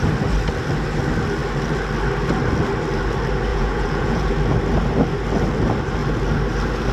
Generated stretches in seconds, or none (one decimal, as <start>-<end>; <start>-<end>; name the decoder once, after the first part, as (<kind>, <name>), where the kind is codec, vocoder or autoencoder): 3.5-4.3 (vocoder, Vocos)